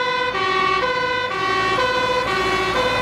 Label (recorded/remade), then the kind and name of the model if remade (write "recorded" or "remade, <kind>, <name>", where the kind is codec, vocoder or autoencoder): recorded